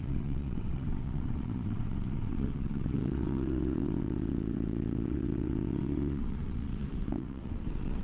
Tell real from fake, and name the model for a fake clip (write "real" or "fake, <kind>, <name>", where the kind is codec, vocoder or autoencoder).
fake, vocoder, WaveNeXt